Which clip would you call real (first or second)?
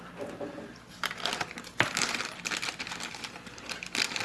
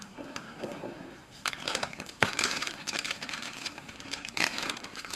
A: first